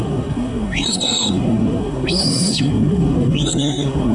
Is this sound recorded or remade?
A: remade